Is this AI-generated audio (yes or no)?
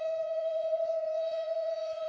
yes